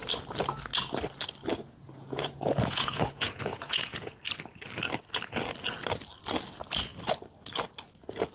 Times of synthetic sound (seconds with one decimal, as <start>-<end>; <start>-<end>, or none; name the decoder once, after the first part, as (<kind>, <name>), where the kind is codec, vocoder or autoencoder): 1.5-4.2 (vocoder, Vocos)